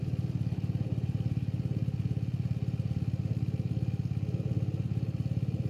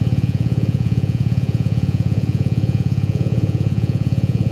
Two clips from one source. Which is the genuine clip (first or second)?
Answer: first